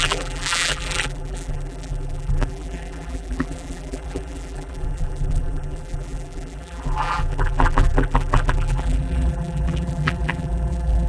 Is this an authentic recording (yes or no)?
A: no